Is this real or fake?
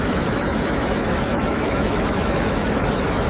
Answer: fake